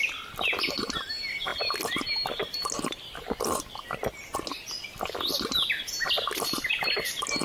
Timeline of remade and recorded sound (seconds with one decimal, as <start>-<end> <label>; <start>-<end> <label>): 0.0-7.4 recorded